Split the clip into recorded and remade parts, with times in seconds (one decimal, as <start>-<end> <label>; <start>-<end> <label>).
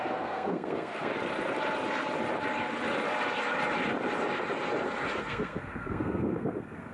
0.0-1.1 remade; 1.1-5.2 recorded; 5.2-6.9 remade